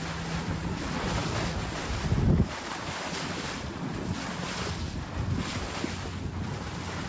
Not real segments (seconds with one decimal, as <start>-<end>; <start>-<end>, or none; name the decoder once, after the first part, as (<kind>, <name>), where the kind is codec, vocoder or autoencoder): none